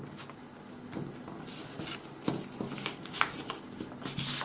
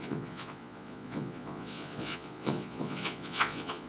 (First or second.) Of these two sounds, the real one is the first